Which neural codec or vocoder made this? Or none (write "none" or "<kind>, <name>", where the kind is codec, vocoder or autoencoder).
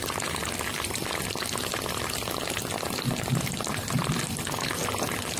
none